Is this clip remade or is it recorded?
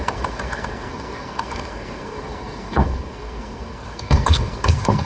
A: remade